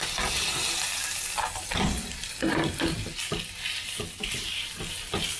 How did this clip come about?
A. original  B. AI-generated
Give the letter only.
A